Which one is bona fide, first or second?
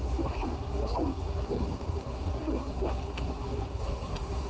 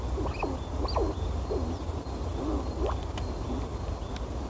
second